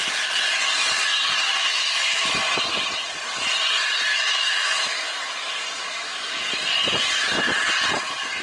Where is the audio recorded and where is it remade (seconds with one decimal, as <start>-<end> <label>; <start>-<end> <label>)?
0.0-1.5 recorded; 1.5-2.3 remade; 2.3-4.1 recorded; 4.1-5.2 remade; 5.2-5.8 recorded; 5.8-6.4 remade; 6.4-8.4 recorded